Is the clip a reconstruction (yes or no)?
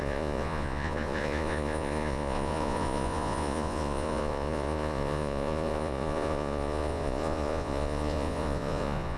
yes